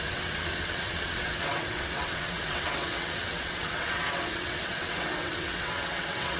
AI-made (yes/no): yes